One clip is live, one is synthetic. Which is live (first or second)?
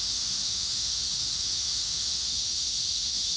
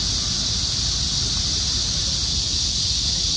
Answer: second